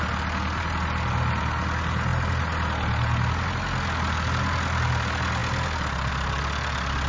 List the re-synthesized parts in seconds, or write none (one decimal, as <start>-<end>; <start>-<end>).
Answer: none